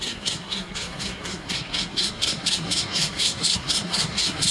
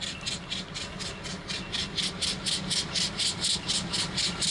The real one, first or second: second